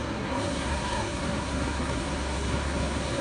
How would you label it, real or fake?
fake